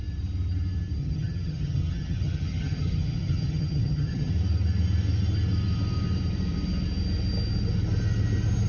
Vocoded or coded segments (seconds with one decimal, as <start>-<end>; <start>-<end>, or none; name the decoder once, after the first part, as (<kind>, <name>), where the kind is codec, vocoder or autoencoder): 1.0-4.3 (vocoder, HiFi-GAN)